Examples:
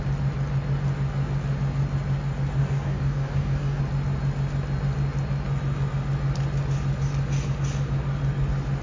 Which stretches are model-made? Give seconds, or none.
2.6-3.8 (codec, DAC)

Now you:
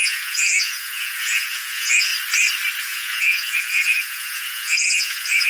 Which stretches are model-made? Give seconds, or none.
0.0-2.1 (vocoder, Vocos); 2.8-5.5

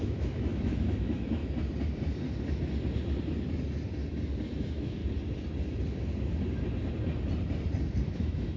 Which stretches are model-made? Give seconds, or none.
0.0-1.4 (autoencoder, DAC-VAE); 4.6-5.0; 8.1-8.6

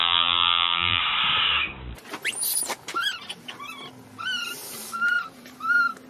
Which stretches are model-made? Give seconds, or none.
0.0-1.0 (vocoder, BigVGAN v2)

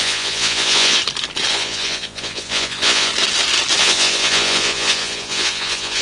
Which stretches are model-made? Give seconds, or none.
0.0-1.0 (vocoder, Vocos); 1.5-3.1; 3.8-6.0